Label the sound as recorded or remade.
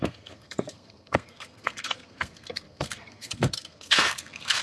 remade